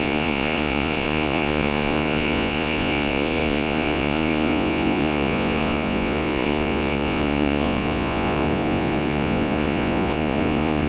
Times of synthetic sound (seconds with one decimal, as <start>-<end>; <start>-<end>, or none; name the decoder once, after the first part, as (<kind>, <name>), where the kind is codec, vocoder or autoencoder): 0.0-10.9 (vocoder, Vocos)